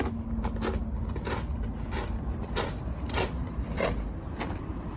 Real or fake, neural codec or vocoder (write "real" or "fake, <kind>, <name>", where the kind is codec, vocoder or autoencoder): real